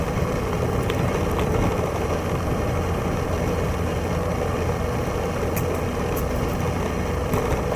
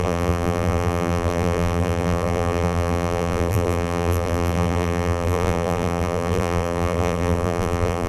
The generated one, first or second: second